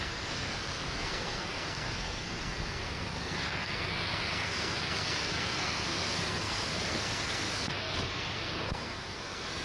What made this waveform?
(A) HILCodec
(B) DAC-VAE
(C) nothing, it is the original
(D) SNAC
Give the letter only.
D